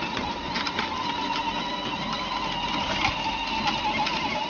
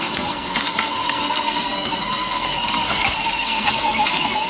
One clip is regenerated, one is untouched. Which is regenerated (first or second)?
second